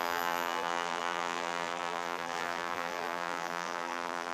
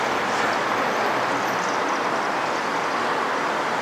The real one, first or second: second